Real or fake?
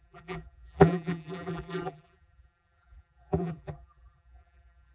fake